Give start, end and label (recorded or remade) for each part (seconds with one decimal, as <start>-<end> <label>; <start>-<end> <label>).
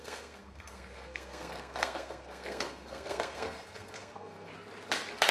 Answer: 0.0-4.5 remade; 4.5-5.3 recorded